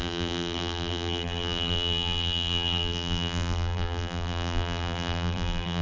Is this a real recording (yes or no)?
no